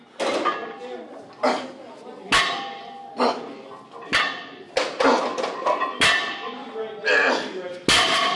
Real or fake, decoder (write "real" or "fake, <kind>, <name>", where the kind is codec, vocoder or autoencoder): real